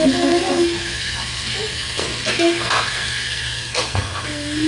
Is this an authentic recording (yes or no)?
no